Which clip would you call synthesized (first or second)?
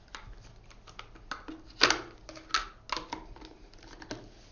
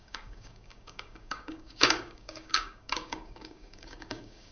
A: second